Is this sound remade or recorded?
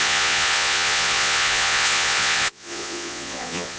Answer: remade